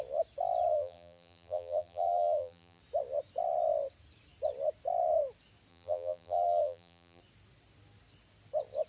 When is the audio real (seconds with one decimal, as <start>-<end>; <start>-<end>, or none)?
0.0-0.7; 2.8-5.7; 7.2-8.9